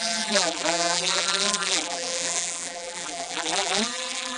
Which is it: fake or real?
fake